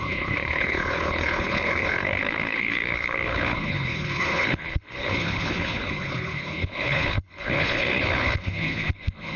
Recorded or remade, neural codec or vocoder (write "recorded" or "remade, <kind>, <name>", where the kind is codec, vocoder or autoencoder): remade, codec, HILCodec